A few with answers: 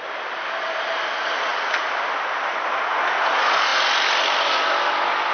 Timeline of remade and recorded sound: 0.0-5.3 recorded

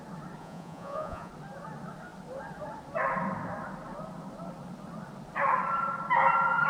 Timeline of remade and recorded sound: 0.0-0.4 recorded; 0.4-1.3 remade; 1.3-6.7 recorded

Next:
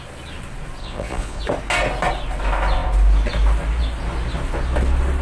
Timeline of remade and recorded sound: 0.0-0.8 recorded; 0.8-1.4 remade; 1.4-5.2 recorded

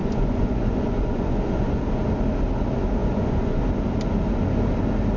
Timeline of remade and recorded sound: 0.0-1.8 remade; 1.8-3.0 recorded; 3.0-3.6 remade; 3.6-5.2 recorded